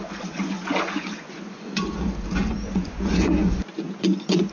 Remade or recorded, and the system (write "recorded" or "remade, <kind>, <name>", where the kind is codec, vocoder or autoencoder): remade, vocoder, Vocos